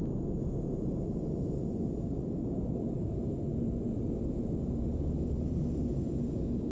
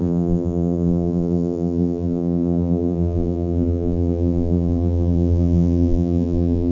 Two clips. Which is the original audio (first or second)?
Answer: first